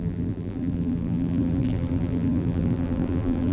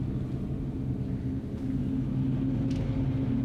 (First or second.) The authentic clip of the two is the second